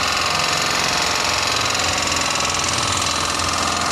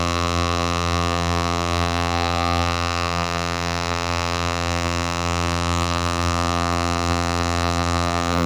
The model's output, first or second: second